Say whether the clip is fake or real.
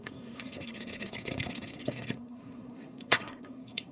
fake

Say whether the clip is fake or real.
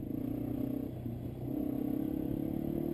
real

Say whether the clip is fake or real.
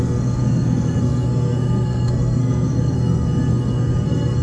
fake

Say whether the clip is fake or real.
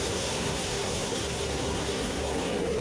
fake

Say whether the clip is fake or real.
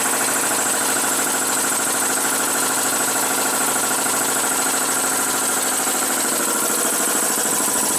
real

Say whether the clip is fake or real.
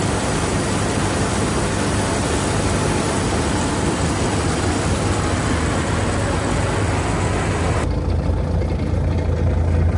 real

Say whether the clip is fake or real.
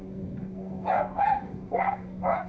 fake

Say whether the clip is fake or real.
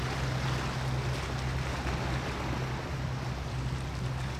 real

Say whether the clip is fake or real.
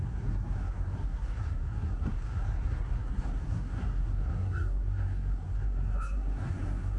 fake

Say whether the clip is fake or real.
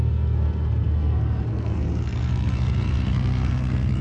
fake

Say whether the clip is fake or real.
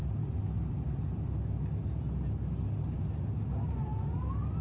real